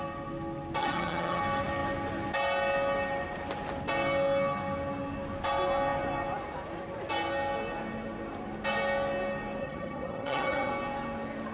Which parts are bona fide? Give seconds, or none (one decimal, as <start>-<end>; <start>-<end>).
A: 0.0-0.8; 1.4-9.6; 10.7-11.5